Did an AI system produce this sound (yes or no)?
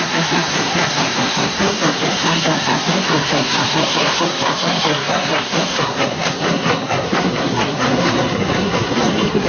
yes